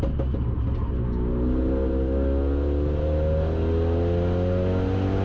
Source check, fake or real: real